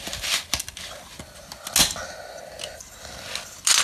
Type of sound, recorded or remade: recorded